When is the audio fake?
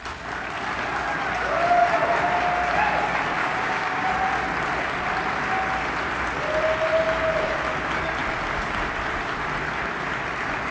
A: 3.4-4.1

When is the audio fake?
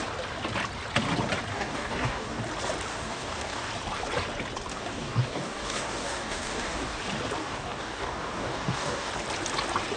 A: 1.5-2.4; 2.9-3.7; 4.7-7.0; 7.4-9.1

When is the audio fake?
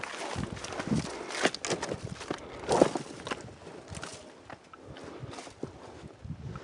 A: none